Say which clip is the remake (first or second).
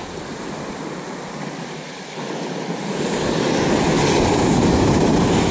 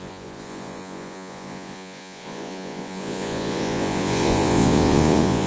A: second